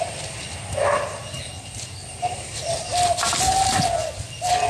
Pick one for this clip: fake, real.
real